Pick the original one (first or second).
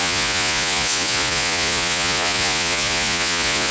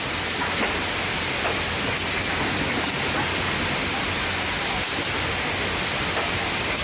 second